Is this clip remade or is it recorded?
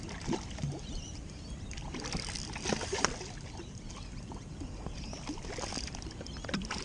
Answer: remade